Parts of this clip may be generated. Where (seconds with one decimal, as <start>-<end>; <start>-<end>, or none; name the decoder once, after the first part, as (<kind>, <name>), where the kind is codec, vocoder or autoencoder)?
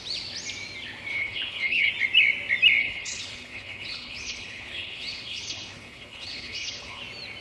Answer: 1.1-1.9 (codec, HILCodec); 2.8-7.0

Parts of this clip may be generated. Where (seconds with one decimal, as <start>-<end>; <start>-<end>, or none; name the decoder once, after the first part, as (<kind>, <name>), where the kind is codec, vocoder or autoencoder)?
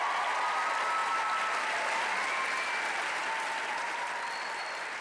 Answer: none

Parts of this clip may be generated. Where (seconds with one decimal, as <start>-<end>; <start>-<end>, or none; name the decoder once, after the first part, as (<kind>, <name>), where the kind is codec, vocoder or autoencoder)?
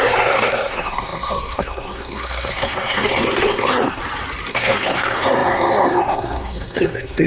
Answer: 0.0-4.0 (codec, SNAC); 4.5-7.3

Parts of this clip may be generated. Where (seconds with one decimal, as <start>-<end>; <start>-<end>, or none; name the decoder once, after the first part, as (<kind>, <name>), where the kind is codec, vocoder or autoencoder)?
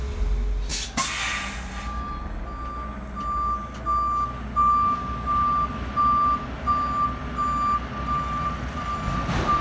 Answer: none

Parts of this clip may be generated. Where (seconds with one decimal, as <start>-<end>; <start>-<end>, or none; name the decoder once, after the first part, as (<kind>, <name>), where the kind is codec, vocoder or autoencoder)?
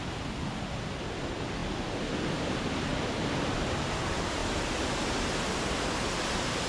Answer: none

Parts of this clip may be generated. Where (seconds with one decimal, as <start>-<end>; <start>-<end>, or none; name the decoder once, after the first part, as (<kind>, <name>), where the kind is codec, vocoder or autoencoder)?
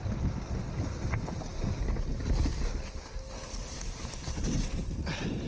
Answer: none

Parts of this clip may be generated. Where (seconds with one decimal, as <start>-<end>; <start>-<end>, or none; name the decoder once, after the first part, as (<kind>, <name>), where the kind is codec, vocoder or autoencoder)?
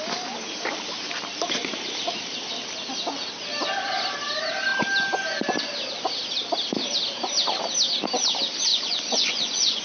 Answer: 8.7-9.8 (vocoder, Vocos)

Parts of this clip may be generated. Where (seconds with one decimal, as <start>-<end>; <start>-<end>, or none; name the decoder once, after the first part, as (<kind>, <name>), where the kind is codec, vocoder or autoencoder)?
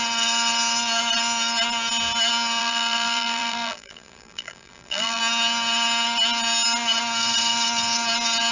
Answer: 2.6-5.2 (vocoder, BigVGAN v2)